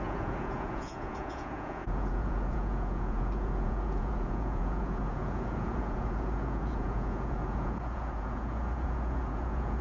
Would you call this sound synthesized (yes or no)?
yes